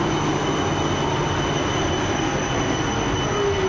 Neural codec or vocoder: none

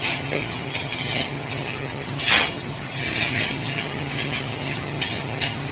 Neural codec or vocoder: vocoder, HiFi-GAN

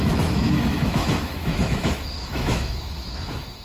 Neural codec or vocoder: autoencoder, DAC-VAE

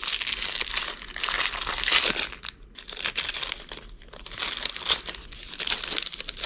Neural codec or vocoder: none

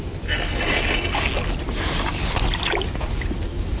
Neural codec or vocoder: none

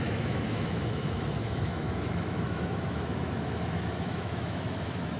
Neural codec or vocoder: autoencoder, DAC-VAE